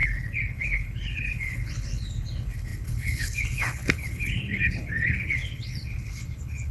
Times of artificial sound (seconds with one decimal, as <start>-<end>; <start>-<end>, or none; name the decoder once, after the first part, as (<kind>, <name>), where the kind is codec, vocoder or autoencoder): 0.0-6.7 (codec, HILCodec)